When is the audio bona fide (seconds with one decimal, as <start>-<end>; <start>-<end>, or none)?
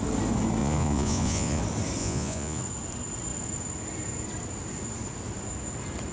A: 0.0-0.6; 1.6-2.0; 2.6-6.1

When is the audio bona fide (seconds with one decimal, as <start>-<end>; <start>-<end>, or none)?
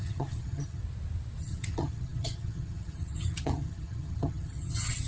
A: 0.8-1.4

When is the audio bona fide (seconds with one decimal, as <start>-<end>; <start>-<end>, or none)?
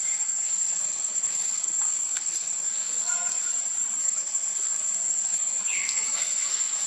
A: 3.4-4.0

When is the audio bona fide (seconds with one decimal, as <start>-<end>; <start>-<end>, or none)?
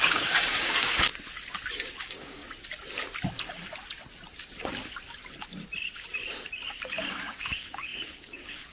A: 1.1-1.7; 2.4-7.4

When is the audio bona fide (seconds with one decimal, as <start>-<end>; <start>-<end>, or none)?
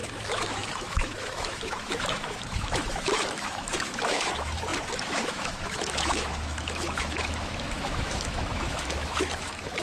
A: none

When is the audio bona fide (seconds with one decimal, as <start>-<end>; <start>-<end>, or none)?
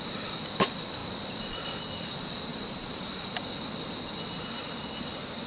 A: 0.0-1.0; 2.0-2.5; 3.4-5.5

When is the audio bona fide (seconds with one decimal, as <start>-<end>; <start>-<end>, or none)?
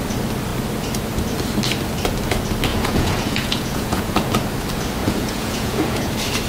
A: 0.0-2.7; 4.3-5.0; 6.1-6.5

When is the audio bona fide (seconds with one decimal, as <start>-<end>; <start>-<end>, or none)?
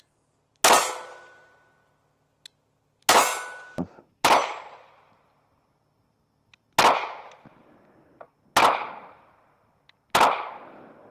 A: 0.0-4.4; 5.5-11.1